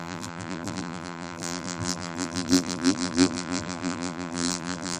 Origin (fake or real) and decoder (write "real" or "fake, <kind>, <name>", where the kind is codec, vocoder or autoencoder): fake, vocoder, BigVGAN v2